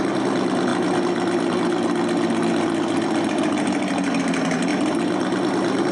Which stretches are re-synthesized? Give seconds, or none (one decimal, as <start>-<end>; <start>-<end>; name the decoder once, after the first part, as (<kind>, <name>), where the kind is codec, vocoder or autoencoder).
none